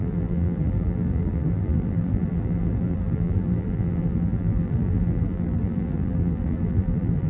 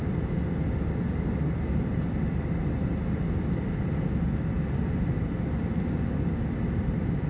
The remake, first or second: first